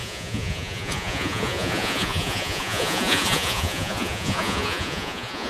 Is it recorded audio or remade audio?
remade